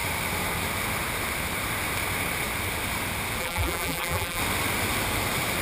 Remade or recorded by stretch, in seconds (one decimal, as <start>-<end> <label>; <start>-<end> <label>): 0.0-3.4 recorded; 3.4-4.4 remade; 4.4-5.6 recorded